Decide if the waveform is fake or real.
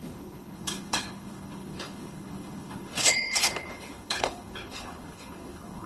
fake